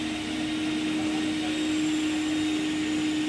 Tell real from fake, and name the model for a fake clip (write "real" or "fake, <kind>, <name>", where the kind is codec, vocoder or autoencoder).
real